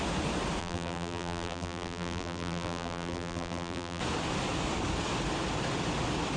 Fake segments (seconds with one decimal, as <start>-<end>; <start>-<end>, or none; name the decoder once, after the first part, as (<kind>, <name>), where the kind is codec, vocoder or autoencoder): 0.6-4.0 (vocoder, BigVGAN v2)